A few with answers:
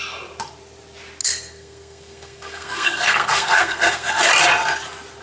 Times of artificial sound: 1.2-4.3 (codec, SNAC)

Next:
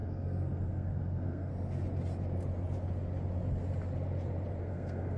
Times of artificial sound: 0.0-1.5 (codec, SNAC); 4.6-5.2

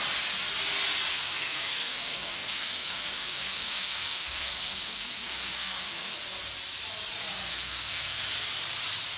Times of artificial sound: 1.1-6.2 (codec, SNAC); 7.5-8.2

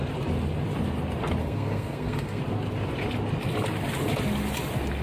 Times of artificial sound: 1.4-2.4 (codec, SNAC)